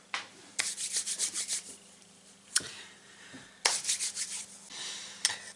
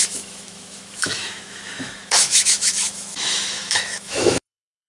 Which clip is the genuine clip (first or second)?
first